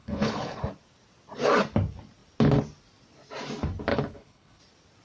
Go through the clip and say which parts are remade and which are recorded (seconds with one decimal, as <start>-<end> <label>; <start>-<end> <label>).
0.0-0.6 remade; 0.6-3.9 recorded; 3.9-4.6 remade; 4.6-5.0 recorded